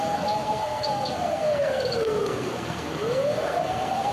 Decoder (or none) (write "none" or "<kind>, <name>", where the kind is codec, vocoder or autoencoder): codec, SNAC